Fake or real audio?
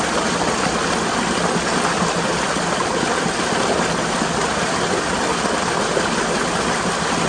real